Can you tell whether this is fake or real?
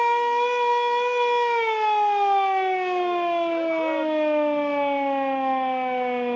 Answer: real